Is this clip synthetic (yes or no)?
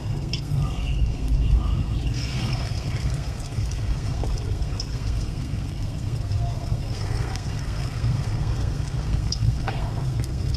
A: yes